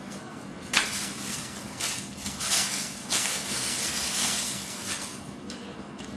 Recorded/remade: remade